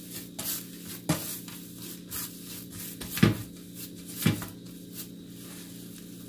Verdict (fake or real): real